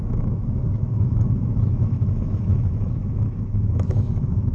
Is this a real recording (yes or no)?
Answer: no